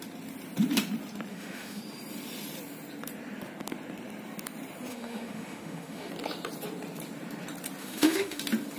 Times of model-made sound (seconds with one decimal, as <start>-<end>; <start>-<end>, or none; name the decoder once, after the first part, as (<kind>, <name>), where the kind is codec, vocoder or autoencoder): 1.3-1.8 (autoencoder, DAC-VAE); 4.9-6.1; 7.8-8.4